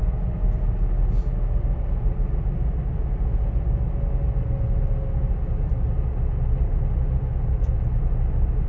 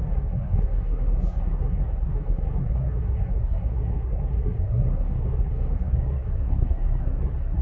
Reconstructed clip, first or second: second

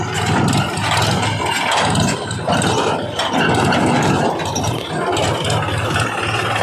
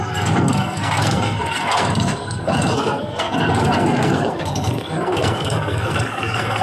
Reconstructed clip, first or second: second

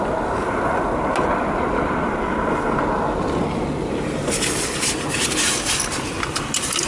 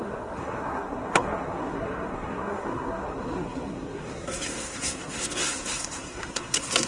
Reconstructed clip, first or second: second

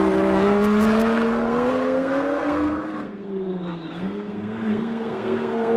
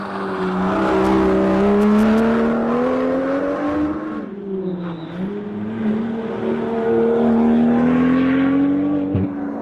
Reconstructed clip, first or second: first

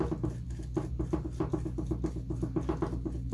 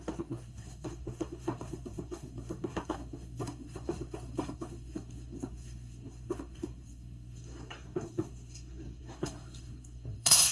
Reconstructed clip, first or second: second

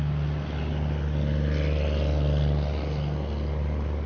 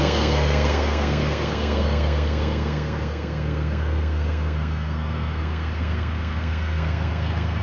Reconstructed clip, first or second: second